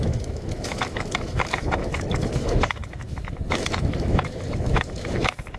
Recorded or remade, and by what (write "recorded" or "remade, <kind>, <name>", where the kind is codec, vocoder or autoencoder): remade, autoencoder, DAC-VAE